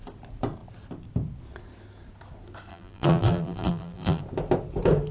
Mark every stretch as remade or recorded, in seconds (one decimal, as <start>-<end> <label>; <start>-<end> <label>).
0.0-2.7 recorded; 2.7-4.2 remade; 4.2-5.1 recorded